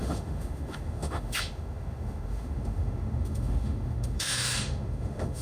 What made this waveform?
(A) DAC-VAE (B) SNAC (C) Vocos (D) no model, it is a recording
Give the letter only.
A